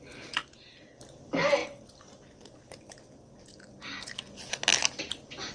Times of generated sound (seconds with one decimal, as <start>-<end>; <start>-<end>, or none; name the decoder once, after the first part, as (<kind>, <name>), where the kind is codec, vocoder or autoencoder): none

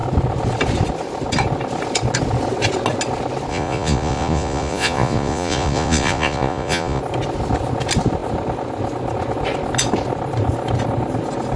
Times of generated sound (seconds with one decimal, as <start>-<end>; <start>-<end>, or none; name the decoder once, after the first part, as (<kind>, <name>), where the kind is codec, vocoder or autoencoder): 3.5-7.0 (vocoder, Vocos)

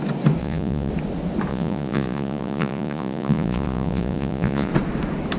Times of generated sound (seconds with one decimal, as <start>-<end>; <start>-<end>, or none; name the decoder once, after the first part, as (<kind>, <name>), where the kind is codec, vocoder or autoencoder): 0.4-0.9 (vocoder, Vocos); 1.5-4.7

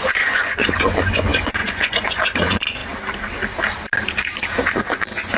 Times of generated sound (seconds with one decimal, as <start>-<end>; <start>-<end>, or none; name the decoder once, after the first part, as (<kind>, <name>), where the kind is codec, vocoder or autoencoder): 0.0-2.8 (vocoder, Vocos); 4.7-5.4

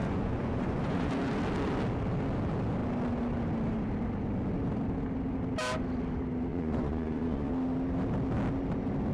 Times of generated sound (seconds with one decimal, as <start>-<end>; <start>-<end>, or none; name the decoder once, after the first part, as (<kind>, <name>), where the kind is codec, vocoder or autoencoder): 0.0-1.1 (vocoder, Vocos); 6.5-7.5